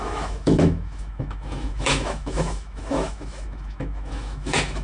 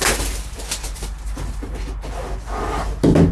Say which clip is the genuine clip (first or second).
second